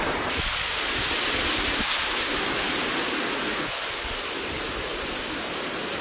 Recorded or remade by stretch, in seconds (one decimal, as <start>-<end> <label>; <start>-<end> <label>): 0.0-6.0 recorded